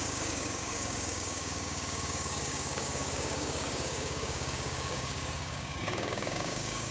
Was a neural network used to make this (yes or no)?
yes